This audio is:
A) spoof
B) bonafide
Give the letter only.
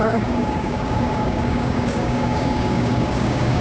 A